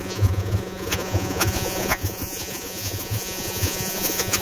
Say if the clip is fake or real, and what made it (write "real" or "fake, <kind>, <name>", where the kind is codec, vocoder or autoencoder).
fake, vocoder, Vocos